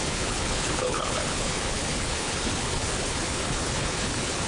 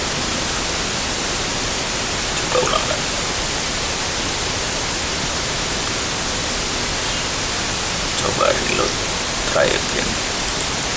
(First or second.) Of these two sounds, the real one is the second